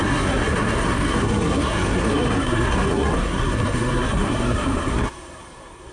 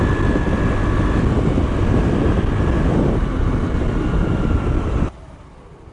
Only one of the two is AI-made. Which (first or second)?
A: first